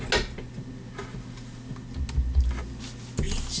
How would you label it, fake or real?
real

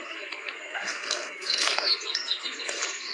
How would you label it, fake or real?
fake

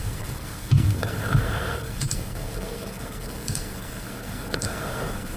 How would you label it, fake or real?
fake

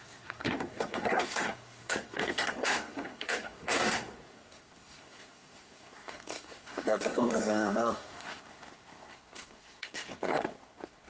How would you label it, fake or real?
fake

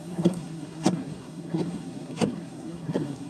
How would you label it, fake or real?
fake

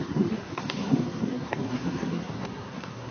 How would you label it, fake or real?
fake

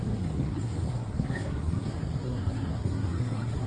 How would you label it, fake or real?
fake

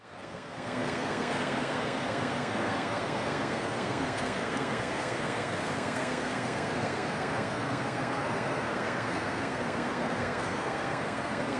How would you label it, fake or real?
fake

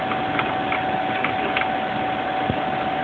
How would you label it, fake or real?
real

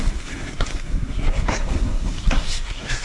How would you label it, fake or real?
fake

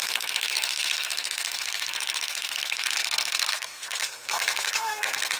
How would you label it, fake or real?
fake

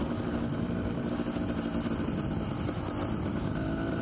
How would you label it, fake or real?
real